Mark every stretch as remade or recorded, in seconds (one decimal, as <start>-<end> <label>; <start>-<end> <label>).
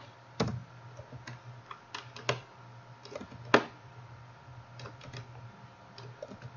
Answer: 0.0-6.6 recorded